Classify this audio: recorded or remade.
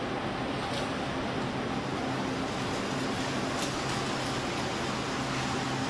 recorded